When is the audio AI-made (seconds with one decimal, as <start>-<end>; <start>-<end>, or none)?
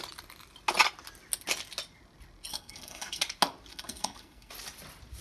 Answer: 2.5-3.2; 3.7-4.5